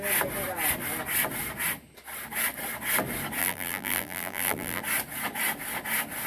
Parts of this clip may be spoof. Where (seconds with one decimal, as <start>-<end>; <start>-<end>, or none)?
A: 3.4-4.8